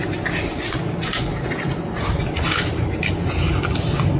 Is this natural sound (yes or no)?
yes